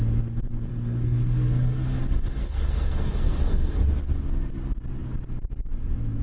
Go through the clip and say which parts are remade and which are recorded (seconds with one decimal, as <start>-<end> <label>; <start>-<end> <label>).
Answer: 0.0-0.7 recorded; 0.7-2.0 remade; 2.0-2.4 recorded; 2.4-3.8 remade; 3.8-6.2 recorded